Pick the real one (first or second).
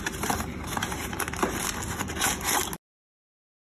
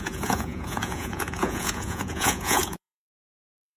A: first